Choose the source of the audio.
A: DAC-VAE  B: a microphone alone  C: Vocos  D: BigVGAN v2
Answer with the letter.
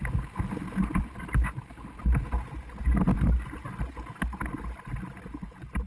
B